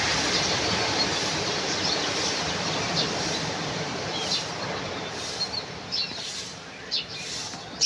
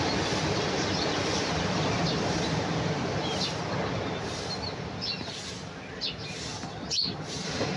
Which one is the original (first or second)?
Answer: second